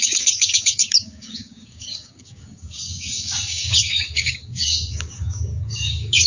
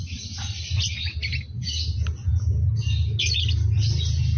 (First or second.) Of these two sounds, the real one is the second